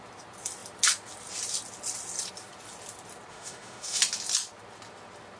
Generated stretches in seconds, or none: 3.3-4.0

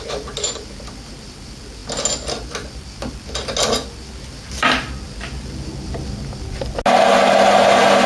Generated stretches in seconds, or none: none

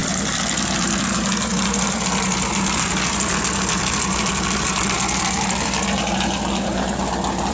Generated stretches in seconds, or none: none

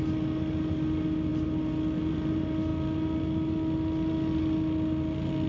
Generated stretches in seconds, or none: none

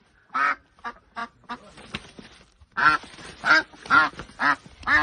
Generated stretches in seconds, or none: none

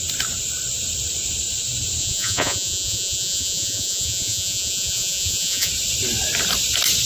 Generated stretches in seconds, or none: 2.0-5.7